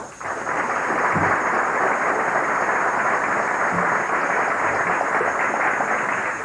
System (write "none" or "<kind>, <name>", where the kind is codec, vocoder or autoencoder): none